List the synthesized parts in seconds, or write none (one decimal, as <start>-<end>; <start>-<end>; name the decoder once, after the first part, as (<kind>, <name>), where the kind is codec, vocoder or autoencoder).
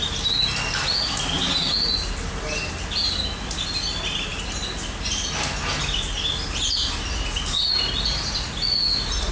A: none